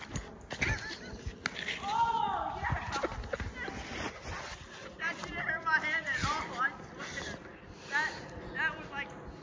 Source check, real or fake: real